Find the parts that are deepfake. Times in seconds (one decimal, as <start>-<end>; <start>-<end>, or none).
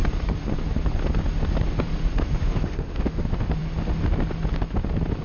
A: 2.4-3.2